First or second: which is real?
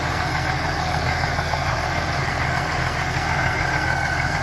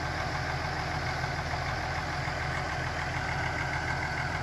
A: second